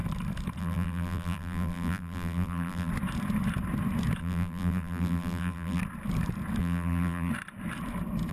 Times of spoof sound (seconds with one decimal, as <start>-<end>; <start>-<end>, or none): 0.6-2.9; 4.2-5.8; 6.6-7.3